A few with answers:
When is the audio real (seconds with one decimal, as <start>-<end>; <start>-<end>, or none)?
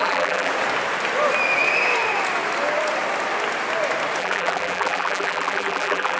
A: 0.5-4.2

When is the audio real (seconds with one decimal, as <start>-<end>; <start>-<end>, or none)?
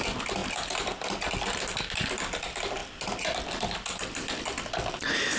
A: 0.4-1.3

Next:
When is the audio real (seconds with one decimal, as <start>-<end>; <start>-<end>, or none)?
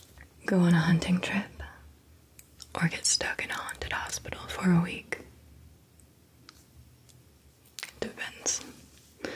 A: 0.0-9.3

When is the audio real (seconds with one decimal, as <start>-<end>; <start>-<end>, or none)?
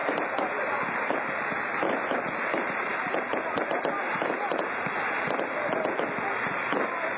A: 0.0-7.2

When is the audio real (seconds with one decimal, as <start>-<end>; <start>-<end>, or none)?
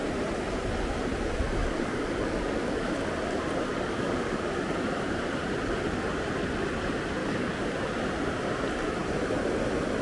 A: 0.0-1.6; 2.9-3.7; 4.5-7.2; 7.7-10.0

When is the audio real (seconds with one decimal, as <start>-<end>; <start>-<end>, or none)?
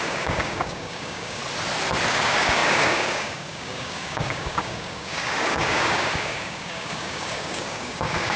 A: 1.4-2.1